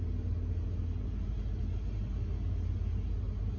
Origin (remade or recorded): recorded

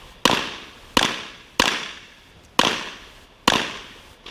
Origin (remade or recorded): recorded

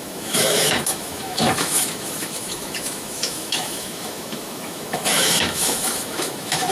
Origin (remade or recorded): remade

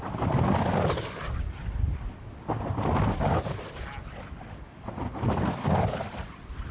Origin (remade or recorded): recorded